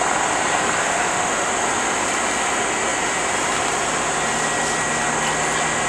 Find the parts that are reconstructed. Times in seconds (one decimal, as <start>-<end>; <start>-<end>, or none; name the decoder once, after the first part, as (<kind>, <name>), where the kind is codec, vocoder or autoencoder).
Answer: 0.8-1.5 (autoencoder, DAC-VAE)